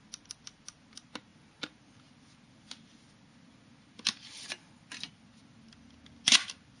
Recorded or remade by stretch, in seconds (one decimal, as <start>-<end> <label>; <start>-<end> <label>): 0.0-6.8 recorded